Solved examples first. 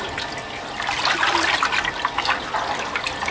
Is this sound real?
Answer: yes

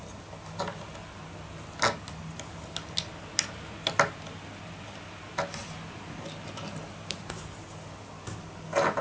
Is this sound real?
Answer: yes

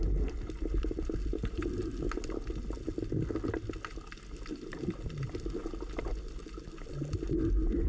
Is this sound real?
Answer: yes